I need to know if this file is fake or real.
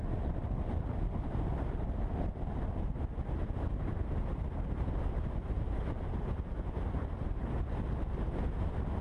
real